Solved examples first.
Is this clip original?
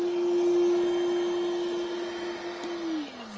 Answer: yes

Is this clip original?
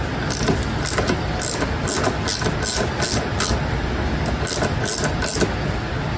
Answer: yes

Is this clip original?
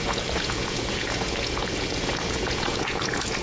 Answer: no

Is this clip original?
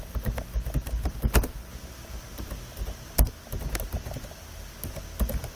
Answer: yes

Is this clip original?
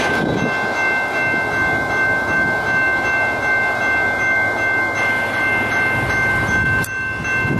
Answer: yes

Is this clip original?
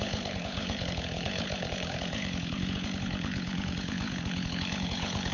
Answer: no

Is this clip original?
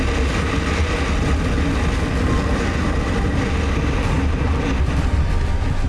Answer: yes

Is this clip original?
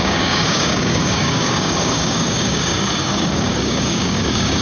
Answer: no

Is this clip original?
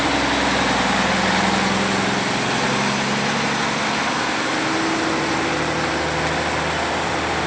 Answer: yes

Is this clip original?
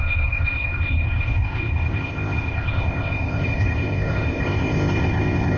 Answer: no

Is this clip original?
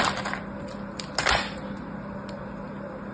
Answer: yes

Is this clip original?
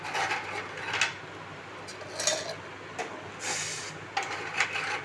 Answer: yes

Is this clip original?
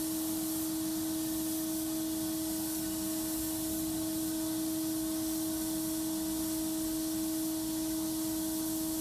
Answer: yes